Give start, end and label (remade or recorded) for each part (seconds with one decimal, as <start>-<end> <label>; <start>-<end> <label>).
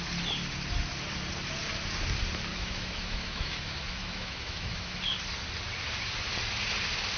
0.0-2.5 recorded; 2.5-5.0 remade; 5.0-7.2 recorded